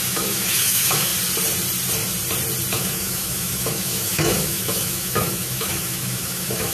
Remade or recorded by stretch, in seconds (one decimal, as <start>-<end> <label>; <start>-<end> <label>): 0.0-1.1 remade; 1.1-2.7 recorded; 2.7-6.7 remade